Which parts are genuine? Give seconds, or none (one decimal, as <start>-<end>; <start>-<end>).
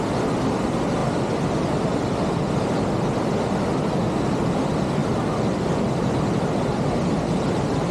0.0-7.9